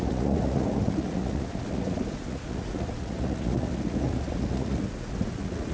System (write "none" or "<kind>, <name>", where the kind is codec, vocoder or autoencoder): vocoder, Vocos